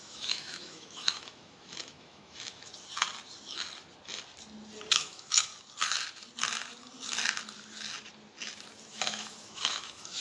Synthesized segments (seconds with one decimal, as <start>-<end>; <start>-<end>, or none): 0.0-2.7; 4.9-5.5; 8.9-10.2